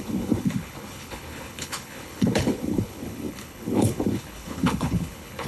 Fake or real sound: fake